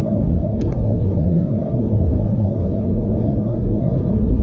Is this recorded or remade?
remade